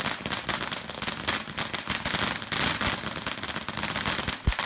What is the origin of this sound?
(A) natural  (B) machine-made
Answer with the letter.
A